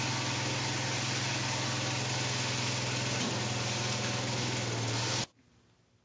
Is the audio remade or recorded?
recorded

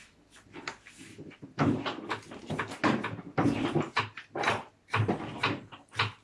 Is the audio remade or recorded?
recorded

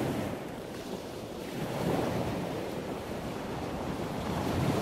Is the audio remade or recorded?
remade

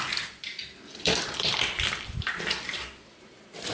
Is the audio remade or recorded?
remade